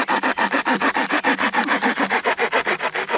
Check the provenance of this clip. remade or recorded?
recorded